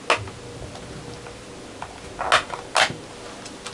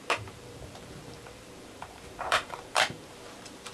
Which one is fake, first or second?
second